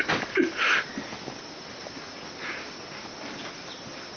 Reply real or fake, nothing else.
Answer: real